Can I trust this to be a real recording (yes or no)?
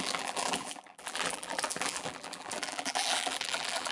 no